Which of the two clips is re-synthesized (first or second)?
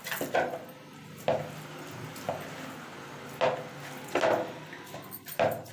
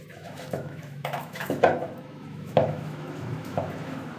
second